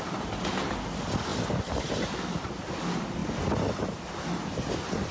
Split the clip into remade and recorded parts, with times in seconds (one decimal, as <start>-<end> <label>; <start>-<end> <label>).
0.0-5.1 recorded